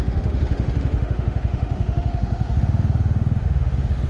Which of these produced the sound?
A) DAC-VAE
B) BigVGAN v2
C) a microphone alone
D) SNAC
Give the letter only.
A